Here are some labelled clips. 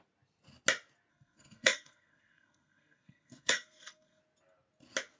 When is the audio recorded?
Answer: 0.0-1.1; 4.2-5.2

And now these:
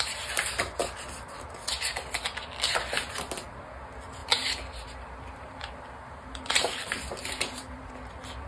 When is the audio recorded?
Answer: 0.0-4.2; 7.9-8.5

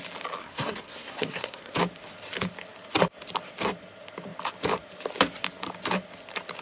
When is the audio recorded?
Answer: 0.0-0.4; 1.7-6.6

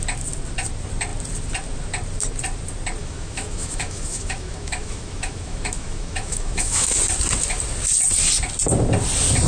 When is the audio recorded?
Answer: 0.0-3.0; 7.0-9.5

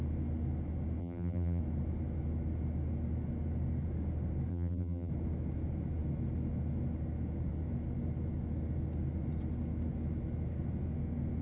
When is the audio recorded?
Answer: 0.0-1.0; 1.6-4.5; 5.1-11.4